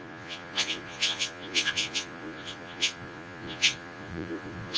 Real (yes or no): no